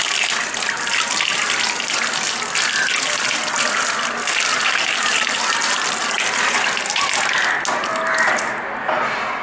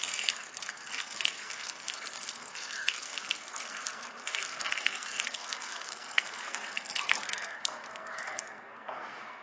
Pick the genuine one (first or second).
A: first